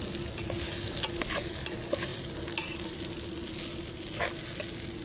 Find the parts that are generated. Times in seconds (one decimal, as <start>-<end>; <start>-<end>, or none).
none